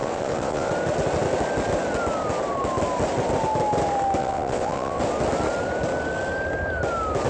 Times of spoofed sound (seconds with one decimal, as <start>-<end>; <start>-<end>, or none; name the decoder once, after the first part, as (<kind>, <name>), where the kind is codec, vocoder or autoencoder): 0.0-0.7 (vocoder, WaveNeXt); 4.2-5.0